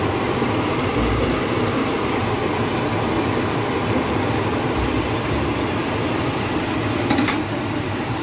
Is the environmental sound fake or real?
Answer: fake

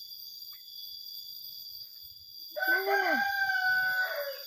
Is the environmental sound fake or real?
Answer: real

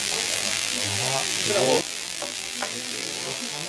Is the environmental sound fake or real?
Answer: fake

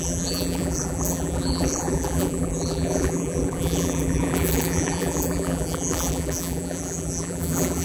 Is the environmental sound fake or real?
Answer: fake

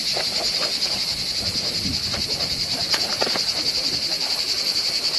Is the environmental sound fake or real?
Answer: real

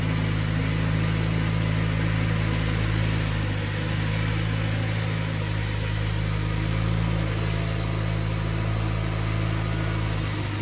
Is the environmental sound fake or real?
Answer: real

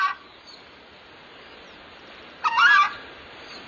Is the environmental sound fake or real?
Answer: fake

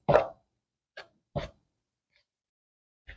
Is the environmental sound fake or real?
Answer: fake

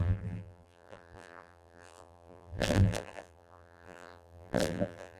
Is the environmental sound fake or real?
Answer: fake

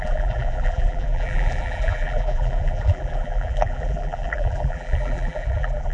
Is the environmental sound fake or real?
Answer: fake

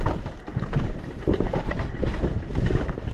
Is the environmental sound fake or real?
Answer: fake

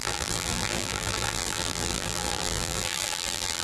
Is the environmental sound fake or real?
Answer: fake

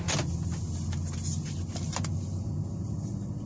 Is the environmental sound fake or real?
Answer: real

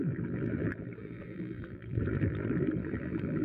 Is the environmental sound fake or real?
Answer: fake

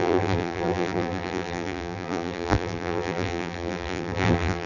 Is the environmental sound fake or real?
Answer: fake